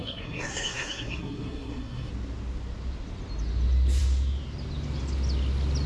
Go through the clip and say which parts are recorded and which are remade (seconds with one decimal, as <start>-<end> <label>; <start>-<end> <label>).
0.0-2.1 remade; 2.1-5.9 recorded